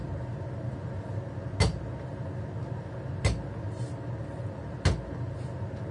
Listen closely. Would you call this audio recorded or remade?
recorded